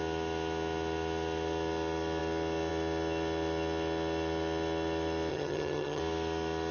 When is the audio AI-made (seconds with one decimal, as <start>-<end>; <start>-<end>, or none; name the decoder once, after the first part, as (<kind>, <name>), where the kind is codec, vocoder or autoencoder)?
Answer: 5.3-6.0 (vocoder, HiFi-GAN)